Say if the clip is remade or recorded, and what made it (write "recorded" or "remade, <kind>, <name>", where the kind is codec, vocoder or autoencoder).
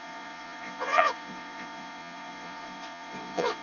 remade, vocoder, Vocos